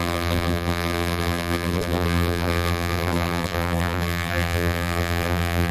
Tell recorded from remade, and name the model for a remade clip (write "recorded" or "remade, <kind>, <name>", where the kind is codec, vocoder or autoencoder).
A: remade, vocoder, BigVGAN v2